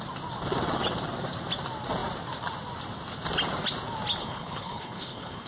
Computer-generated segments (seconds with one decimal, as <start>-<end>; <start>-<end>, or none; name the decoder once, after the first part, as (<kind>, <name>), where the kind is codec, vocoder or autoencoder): 4.2-5.5 (codec, HILCodec)